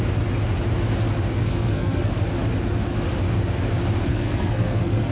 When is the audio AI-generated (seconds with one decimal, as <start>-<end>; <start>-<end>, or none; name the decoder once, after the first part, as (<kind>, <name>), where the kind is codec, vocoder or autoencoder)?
1.3-2.1 (codec, SNAC); 4.1-5.1